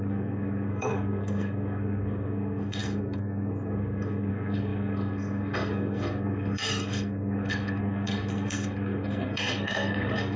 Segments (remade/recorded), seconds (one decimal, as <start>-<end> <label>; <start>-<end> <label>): 0.0-10.4 remade